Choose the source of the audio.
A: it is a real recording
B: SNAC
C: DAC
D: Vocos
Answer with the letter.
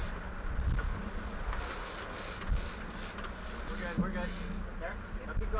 A